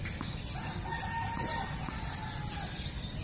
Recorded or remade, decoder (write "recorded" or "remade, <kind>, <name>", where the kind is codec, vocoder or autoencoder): recorded